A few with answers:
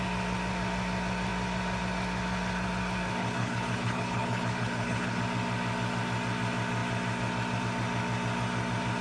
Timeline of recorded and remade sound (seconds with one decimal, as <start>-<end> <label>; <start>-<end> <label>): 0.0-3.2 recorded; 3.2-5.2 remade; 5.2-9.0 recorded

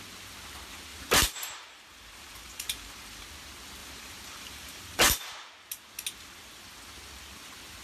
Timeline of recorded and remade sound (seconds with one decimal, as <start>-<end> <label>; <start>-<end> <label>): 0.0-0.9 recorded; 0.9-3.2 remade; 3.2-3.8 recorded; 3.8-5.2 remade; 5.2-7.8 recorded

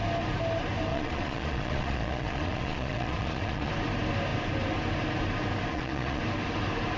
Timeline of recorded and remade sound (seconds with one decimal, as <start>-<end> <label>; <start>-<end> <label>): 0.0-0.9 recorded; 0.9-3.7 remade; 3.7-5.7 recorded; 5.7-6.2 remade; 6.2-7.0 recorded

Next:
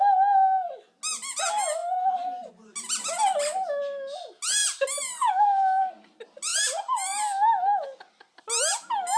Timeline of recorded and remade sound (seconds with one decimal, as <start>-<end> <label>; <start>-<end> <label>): 0.0-9.2 recorded

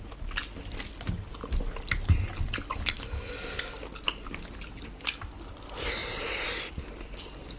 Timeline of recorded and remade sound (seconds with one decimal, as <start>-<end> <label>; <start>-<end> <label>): 0.0-7.6 recorded

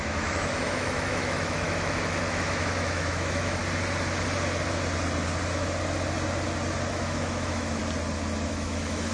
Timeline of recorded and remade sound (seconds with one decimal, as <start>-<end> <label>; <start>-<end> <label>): 0.0-3.6 remade; 3.6-6.9 recorded; 6.9-7.8 remade; 7.8-8.5 recorded; 8.5-9.1 remade